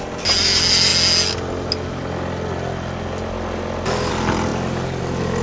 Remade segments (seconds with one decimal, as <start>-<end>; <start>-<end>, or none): none